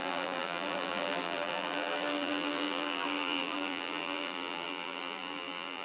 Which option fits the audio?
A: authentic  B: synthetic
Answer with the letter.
B